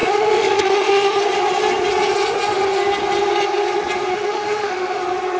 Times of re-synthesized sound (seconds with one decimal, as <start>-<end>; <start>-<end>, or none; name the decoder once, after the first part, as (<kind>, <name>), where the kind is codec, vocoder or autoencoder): 0.0-1.2 (autoencoder, DAC-VAE); 4.1-5.0